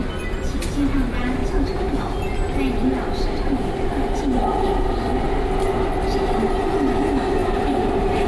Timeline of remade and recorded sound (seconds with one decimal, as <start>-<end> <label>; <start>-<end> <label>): 0.0-1.4 recorded; 1.4-2.0 remade; 2.0-7.4 recorded; 7.4-8.3 remade